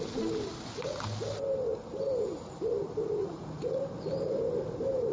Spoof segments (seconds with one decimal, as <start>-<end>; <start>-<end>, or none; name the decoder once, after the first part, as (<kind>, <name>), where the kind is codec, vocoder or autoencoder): 3.2-3.8 (vocoder, Vocos)